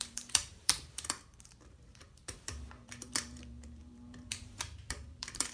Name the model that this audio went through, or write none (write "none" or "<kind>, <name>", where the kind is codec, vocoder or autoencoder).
vocoder, BigVGAN v2